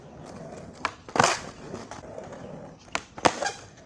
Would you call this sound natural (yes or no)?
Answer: yes